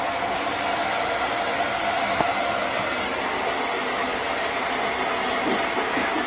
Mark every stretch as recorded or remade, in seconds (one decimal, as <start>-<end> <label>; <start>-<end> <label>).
0.0-6.3 recorded